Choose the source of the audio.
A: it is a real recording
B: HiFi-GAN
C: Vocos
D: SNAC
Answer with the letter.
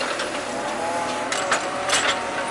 A